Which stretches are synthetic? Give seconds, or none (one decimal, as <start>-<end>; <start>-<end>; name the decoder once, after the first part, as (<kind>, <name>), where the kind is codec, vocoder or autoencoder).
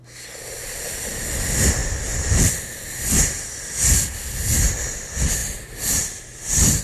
none